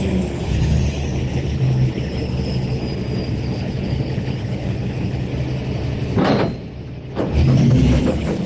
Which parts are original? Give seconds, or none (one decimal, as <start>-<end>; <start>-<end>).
2.8-3.3; 5.3-8.0